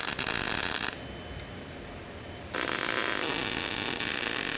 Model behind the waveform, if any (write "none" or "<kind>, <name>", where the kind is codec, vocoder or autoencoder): none